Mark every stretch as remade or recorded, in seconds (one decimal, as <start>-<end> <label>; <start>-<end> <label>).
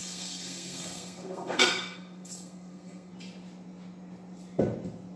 0.0-3.1 remade; 3.1-5.2 recorded